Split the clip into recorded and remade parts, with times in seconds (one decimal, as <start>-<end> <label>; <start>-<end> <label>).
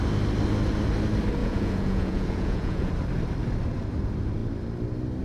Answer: 0.0-1.4 recorded; 1.4-2.9 remade; 2.9-5.2 recorded